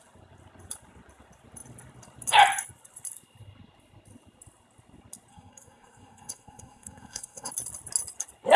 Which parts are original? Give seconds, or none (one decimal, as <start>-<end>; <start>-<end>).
0.0-5.3; 7.5-8.6